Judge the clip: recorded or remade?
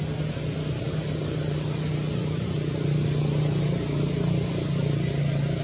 recorded